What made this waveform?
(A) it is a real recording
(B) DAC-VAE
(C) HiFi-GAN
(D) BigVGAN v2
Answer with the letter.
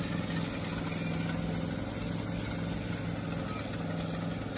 A